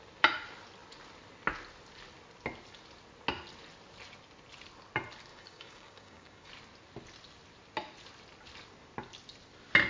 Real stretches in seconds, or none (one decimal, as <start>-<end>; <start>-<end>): 0.0-5.3; 6.5-9.9